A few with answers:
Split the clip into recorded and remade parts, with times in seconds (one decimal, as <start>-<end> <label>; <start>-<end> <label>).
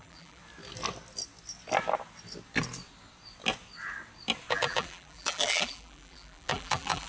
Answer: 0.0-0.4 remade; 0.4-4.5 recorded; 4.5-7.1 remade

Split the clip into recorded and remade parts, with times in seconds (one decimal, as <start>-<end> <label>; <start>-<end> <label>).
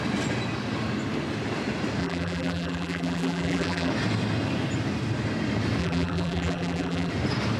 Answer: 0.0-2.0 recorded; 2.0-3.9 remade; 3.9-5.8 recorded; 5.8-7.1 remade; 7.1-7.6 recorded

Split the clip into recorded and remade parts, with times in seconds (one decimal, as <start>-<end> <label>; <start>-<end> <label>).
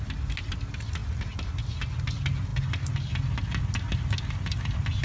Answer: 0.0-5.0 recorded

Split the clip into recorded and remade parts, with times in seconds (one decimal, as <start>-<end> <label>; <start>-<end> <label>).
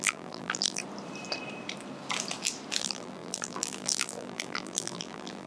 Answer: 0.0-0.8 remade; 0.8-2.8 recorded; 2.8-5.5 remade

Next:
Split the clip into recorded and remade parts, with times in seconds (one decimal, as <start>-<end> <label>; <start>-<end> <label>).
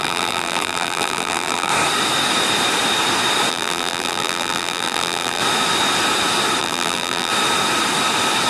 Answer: 0.0-1.7 remade; 1.7-3.5 recorded; 3.5-5.4 remade; 5.4-6.6 recorded; 6.6-7.3 remade; 7.3-8.5 recorded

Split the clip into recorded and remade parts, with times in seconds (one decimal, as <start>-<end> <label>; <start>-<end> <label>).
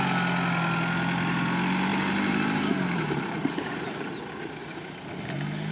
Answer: 0.0-1.9 recorded; 1.9-4.1 remade; 4.1-4.6 recorded; 4.6-5.2 remade; 5.2-5.7 recorded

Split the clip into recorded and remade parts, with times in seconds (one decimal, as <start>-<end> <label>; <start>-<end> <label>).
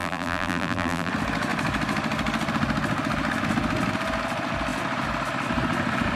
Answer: 0.0-1.1 remade; 1.1-6.2 recorded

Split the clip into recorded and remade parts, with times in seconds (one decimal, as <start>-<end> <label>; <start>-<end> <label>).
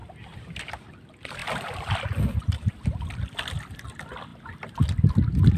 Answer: 0.0-0.7 remade; 0.7-4.3 recorded; 4.3-5.6 remade